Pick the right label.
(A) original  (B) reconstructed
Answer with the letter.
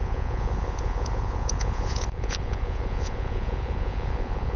B